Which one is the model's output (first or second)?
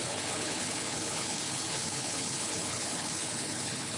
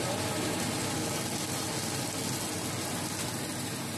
first